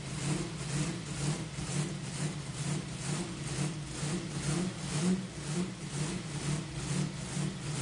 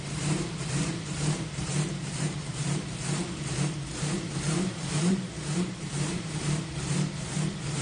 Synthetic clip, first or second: second